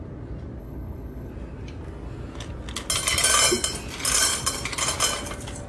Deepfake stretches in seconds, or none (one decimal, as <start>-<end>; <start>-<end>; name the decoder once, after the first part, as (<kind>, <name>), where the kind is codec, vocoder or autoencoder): 0.6-1.3 (codec, HILCodec)